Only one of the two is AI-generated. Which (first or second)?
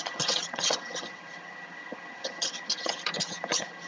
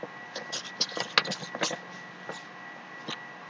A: first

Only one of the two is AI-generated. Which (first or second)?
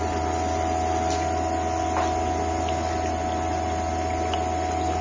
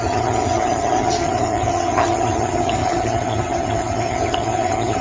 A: second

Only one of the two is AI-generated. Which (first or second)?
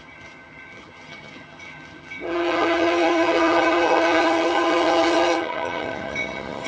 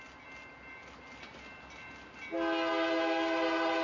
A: first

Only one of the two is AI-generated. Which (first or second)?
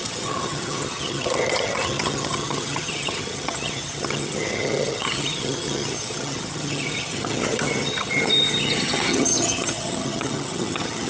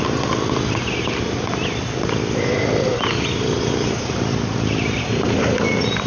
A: first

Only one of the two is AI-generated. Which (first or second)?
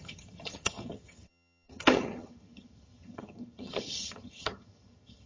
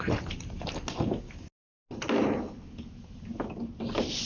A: first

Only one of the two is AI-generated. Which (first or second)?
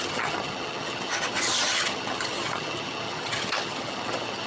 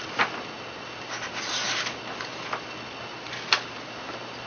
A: first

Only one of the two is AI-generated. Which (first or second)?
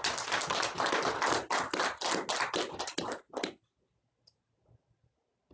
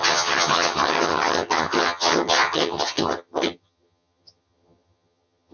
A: second